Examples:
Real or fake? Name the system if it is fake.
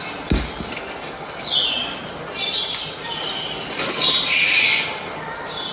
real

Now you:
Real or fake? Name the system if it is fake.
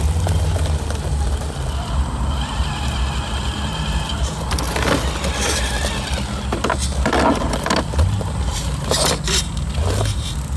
real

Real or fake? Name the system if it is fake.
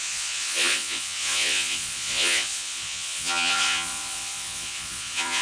fake, vocoder, Vocos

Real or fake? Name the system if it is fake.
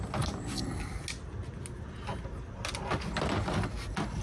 real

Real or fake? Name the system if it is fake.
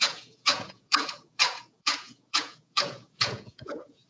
fake, vocoder, Vocos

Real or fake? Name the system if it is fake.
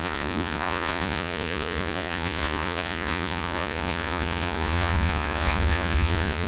fake, vocoder, Vocos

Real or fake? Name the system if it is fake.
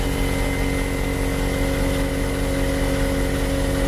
real